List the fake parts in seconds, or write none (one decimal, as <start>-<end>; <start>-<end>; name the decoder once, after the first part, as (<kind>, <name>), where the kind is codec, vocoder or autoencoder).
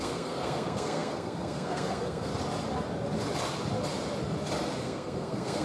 0.0-2.3 (codec, SNAC); 4.8-5.6